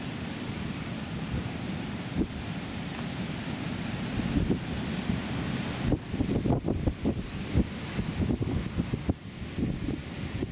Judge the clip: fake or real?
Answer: fake